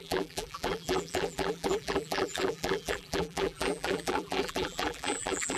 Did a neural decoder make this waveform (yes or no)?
yes